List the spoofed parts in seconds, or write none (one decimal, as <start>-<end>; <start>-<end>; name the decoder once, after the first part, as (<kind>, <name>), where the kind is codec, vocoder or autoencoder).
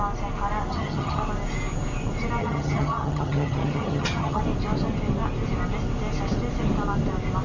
0.7-1.2 (vocoder, HiFi-GAN); 2.4-4.4